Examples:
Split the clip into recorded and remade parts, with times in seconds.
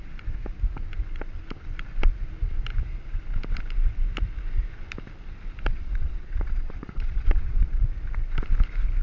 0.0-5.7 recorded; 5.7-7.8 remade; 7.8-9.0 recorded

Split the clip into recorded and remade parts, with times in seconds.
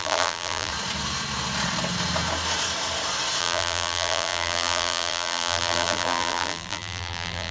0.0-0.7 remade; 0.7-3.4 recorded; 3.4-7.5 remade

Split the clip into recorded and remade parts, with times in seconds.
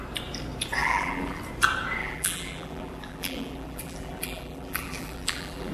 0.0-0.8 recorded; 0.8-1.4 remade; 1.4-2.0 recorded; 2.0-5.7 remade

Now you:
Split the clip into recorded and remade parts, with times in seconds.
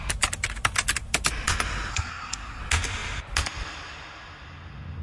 0.0-1.9 recorded; 1.9-2.6 remade; 2.6-5.0 recorded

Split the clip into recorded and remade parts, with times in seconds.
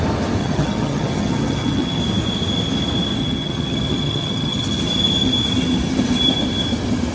0.0-0.4 recorded; 0.4-2.0 remade; 2.0-3.2 recorded; 3.2-4.8 remade; 4.8-7.1 recorded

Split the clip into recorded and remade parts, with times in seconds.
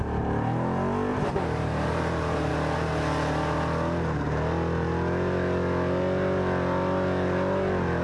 0.0-1.1 recorded; 1.1-2.5 remade; 2.5-8.0 recorded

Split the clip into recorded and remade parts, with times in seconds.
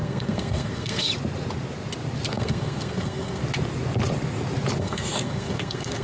0.0-1.1 remade; 1.1-2.3 recorded; 2.3-3.4 remade; 3.4-4.8 recorded; 4.8-6.0 remade